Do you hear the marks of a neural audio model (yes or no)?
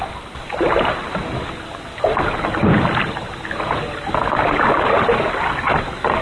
no